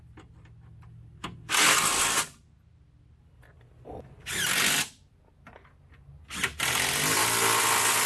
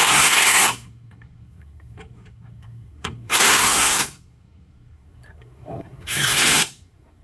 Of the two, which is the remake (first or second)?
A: second